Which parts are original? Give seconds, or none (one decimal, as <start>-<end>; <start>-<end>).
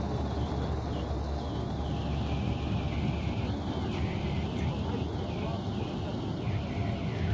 0.0-7.3